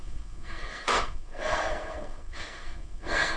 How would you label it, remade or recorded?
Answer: remade